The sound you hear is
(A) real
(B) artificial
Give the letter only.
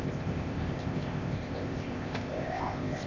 B